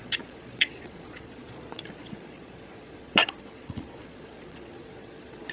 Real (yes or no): no